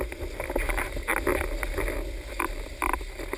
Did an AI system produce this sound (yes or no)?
no